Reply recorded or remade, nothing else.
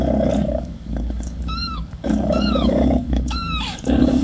remade